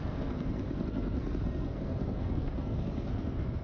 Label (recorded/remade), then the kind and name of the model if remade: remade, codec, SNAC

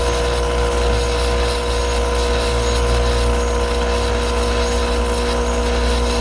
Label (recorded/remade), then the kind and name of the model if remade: recorded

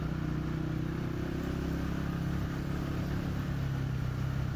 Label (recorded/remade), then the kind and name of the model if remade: recorded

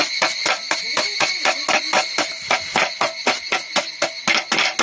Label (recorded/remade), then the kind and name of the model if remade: recorded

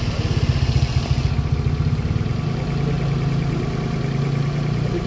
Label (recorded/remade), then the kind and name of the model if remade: recorded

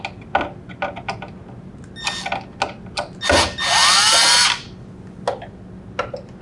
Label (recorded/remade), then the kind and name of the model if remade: recorded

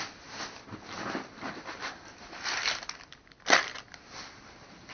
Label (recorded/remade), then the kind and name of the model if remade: recorded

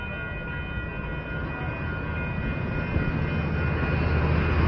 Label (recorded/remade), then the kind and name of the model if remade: recorded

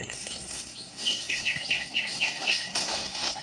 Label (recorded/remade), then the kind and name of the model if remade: remade, codec, SNAC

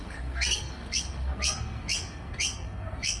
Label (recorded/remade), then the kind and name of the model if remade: remade, codec, SNAC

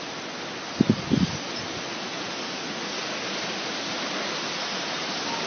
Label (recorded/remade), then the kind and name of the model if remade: recorded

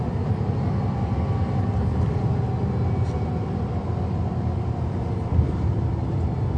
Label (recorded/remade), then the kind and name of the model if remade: recorded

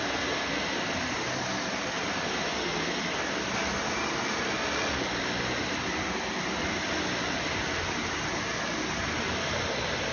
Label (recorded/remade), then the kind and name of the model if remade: recorded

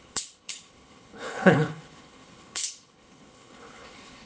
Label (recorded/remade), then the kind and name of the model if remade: remade, codec, HILCodec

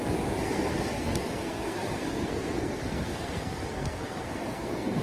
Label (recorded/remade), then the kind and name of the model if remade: remade, codec, SNAC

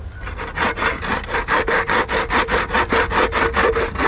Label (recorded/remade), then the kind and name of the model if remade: recorded